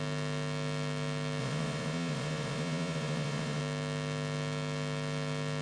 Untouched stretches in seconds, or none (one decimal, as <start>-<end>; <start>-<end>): 0.0-1.4; 3.6-5.6